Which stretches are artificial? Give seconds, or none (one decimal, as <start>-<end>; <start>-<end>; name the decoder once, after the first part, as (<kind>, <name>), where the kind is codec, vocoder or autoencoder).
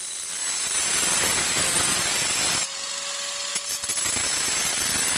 0.4-2.9 (vocoder, BigVGAN v2)